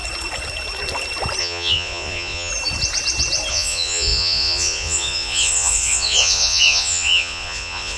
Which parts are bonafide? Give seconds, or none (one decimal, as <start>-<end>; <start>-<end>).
0.0-1.4; 2.5-3.5